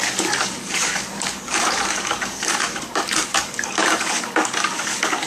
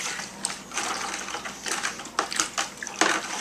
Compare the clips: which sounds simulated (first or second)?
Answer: first